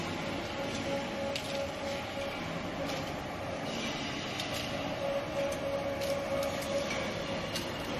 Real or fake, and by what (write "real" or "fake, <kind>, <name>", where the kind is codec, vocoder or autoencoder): real